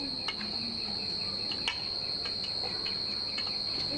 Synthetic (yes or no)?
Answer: no